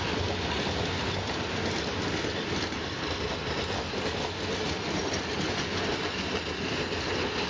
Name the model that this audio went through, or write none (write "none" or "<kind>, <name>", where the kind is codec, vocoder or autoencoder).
none